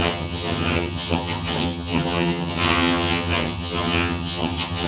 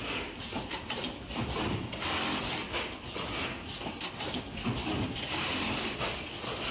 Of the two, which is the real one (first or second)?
second